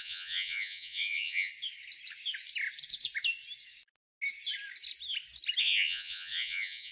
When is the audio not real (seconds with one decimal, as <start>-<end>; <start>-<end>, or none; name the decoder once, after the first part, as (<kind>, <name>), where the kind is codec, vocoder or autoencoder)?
0.0-1.5 (vocoder, Vocos); 5.6-6.9